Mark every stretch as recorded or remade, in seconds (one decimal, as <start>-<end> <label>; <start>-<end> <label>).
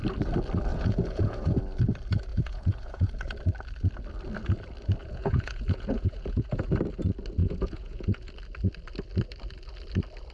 0.0-0.7 recorded; 0.7-1.6 remade; 1.6-2.3 recorded; 2.3-3.1 remade; 3.1-5.0 recorded; 5.0-6.7 remade; 6.7-7.4 recorded; 7.4-8.3 remade; 8.3-10.3 recorded